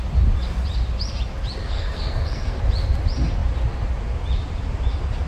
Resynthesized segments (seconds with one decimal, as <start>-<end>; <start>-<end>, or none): 1.6-2.6